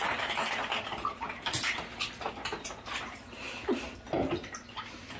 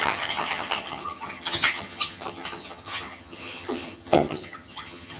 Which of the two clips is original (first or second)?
first